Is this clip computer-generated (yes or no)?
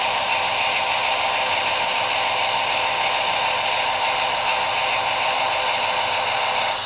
no